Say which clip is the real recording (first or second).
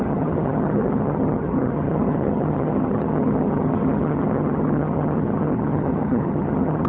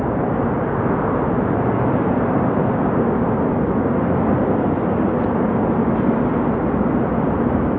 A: second